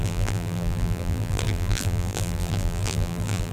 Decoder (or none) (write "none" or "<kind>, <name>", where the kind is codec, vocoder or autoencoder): vocoder, BigVGAN v2